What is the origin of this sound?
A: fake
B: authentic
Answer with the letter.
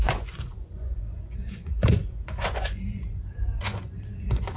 A